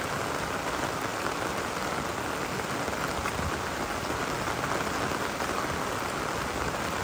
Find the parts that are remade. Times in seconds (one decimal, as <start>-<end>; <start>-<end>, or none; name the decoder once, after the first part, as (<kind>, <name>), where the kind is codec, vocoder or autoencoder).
none

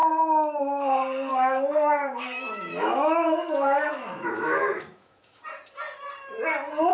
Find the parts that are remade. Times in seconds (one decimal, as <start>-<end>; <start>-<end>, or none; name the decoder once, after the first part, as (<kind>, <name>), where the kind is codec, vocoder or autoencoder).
1.3-5.4 (autoencoder, DAC-VAE)

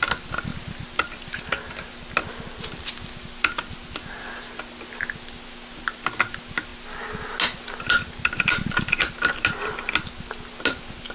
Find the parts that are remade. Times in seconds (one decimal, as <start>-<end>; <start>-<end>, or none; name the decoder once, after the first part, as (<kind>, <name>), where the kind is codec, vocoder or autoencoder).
none